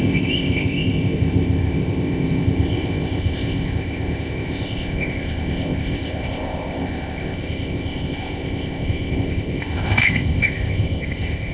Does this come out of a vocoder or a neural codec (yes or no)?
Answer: yes